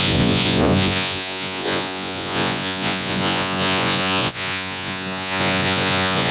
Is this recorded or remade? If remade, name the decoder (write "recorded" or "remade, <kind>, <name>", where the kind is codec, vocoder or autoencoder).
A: remade, vocoder, Vocos